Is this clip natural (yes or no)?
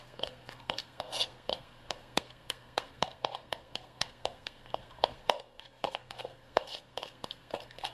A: no